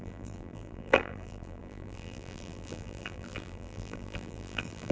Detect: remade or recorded remade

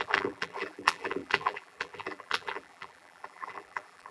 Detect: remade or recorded remade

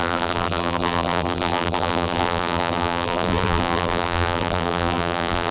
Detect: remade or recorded remade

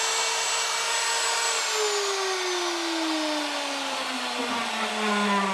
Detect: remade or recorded recorded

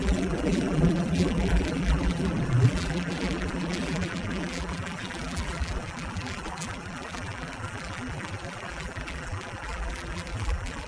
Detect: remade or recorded remade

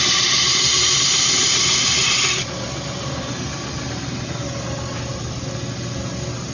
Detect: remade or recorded recorded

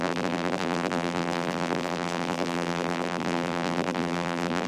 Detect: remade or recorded remade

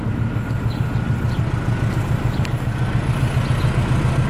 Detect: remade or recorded recorded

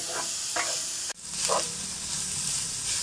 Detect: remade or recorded remade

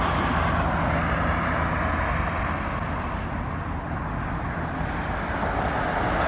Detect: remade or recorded recorded